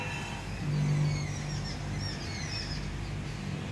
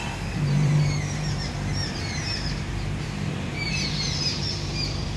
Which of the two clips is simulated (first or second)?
second